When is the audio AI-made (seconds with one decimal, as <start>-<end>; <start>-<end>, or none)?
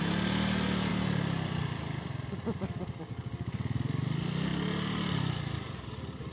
none